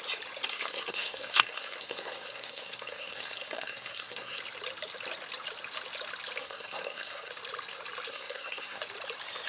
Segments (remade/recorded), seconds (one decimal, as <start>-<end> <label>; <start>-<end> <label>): 0.0-0.5 recorded; 0.5-4.4 remade; 4.4-6.4 recorded; 6.4-7.3 remade; 7.3-8.1 recorded; 8.1-8.8 remade; 8.8-9.5 recorded